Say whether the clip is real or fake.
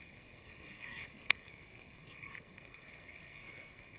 fake